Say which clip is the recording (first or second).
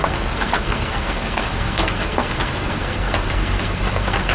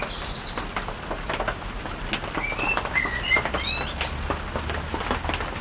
second